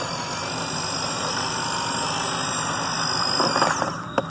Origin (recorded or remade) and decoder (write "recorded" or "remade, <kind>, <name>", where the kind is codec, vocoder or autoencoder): recorded